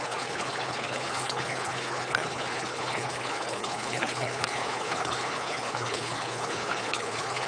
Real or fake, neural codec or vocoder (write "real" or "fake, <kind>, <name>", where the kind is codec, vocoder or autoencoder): fake, codec, HILCodec